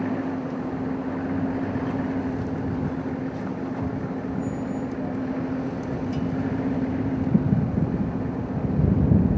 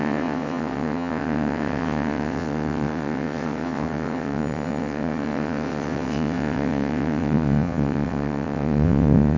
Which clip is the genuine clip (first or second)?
first